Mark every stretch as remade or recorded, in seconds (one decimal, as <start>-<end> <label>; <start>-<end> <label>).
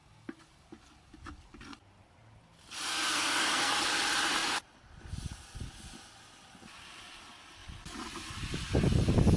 0.0-2.9 recorded; 2.9-3.7 remade; 3.7-9.4 recorded